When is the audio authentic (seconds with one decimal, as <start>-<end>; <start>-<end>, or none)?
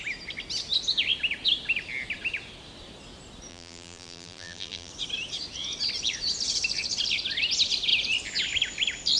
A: 0.0-3.5; 4.9-9.2